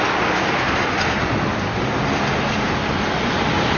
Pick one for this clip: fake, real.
real